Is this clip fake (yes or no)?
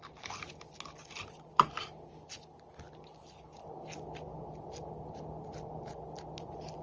no